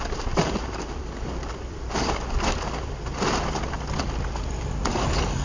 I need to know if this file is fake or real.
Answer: real